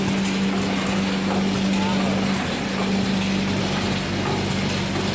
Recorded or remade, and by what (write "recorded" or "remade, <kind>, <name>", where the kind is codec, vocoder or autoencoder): recorded